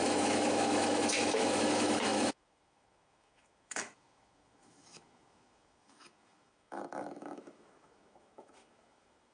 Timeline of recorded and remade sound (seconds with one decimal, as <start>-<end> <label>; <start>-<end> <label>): 0.0-9.3 remade